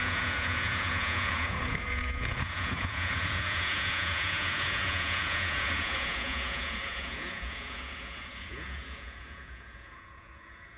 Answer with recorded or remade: remade